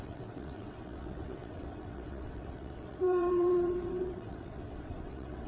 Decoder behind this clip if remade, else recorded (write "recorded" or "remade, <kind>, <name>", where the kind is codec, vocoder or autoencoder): remade, vocoder, WaveNeXt